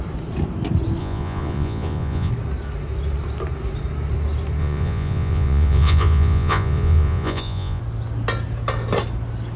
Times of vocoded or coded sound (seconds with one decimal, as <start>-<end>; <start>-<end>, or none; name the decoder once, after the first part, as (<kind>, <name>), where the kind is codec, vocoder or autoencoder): 1.0-2.3 (vocoder, Vocos); 4.6-7.8